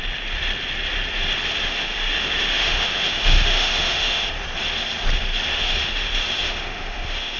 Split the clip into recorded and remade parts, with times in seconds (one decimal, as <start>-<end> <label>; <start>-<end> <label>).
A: 0.0-1.6 recorded; 1.6-4.3 remade; 4.3-5.5 recorded; 5.5-7.4 remade